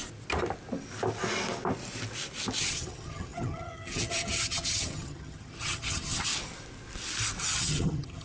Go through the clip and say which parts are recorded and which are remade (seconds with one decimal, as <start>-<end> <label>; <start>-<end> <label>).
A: 0.0-2.6 recorded; 2.6-6.3 remade; 6.3-7.4 recorded; 7.4-8.2 remade